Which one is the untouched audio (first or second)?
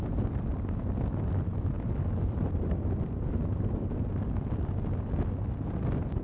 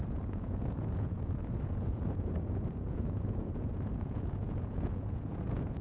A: first